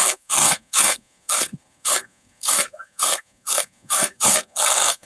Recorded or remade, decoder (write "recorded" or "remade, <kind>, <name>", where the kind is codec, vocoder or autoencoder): remade, codec, SNAC